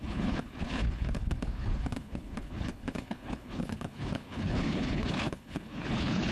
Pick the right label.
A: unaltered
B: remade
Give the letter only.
B